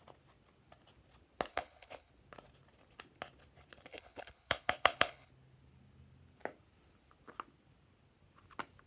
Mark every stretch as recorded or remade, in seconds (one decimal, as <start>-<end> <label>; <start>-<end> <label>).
0.0-1.5 recorded; 1.5-2.1 remade; 2.1-3.9 recorded; 3.9-5.3 remade; 5.3-8.9 recorded

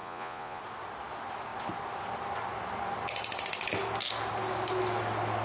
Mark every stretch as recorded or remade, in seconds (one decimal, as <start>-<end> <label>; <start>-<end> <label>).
0.0-0.6 remade; 0.6-5.4 recorded

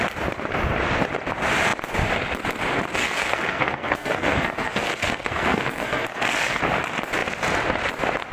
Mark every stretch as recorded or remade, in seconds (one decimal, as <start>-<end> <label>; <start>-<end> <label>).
0.0-3.0 recorded; 3.0-6.6 remade; 6.6-8.3 recorded

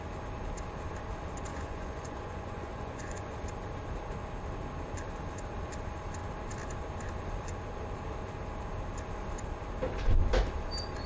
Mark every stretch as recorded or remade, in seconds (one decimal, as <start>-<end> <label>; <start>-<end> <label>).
0.0-1.5 recorded; 1.5-3.4 remade; 3.4-11.1 recorded

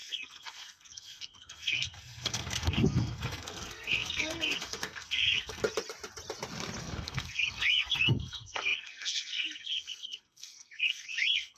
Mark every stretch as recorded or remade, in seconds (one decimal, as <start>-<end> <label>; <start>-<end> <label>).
0.0-5.6 remade; 5.6-6.8 recorded; 6.8-11.6 remade

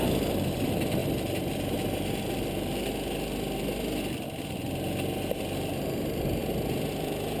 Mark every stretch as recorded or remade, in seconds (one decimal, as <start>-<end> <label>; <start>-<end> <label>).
0.0-1.0 remade; 1.0-5.4 recorded; 5.4-6.4 remade; 6.4-6.9 recorded; 6.9-7.4 remade

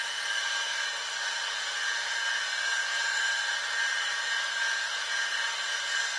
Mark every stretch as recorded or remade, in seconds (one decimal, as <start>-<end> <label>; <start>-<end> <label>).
0.0-2.8 recorded; 2.8-4.9 remade; 4.9-6.2 recorded

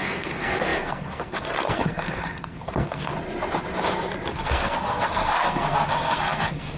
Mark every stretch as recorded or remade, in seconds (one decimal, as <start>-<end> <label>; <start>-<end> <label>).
0.0-3.1 remade; 3.1-4.3 recorded; 4.3-6.8 remade